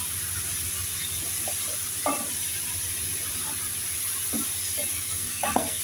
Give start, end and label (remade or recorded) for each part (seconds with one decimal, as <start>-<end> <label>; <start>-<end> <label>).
0.0-4.9 recorded; 4.9-5.8 remade